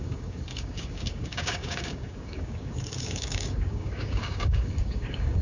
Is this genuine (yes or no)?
no